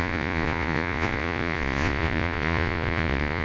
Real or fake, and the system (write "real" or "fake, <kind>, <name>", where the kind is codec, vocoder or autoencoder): fake, vocoder, Vocos